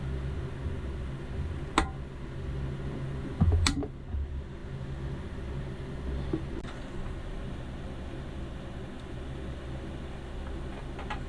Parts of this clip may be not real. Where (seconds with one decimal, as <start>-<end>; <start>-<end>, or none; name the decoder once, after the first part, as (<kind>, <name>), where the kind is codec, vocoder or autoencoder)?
none